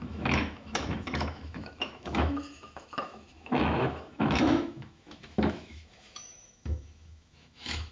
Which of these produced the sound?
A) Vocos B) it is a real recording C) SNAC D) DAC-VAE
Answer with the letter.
D